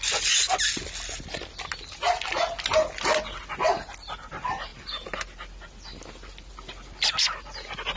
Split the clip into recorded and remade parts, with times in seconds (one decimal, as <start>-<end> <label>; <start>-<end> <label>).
0.0-8.0 recorded